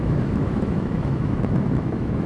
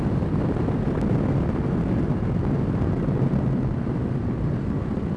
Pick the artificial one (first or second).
first